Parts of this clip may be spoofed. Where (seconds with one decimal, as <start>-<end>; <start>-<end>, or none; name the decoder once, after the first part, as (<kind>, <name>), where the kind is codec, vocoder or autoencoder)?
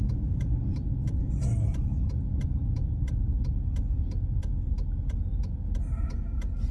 none